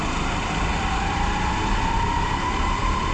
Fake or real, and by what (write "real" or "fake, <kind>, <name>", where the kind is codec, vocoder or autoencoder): real